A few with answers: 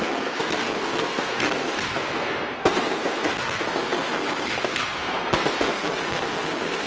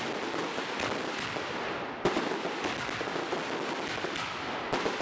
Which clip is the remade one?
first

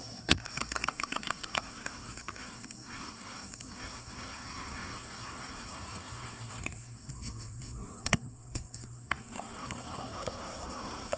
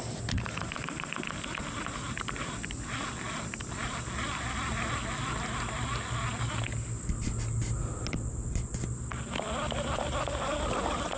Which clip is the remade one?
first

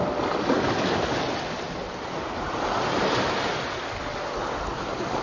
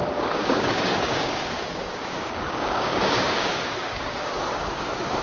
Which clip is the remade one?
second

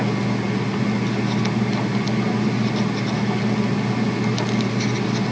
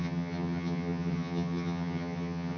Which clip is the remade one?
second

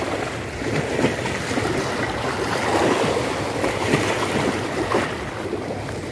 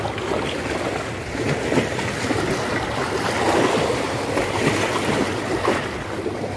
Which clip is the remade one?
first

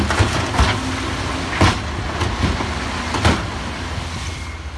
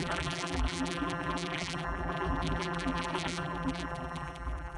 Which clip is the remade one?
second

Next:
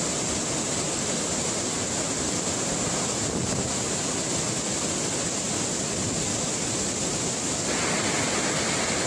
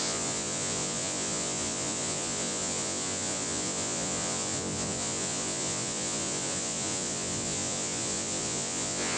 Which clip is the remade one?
second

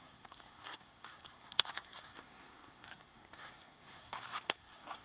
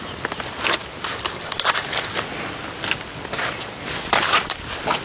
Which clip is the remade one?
first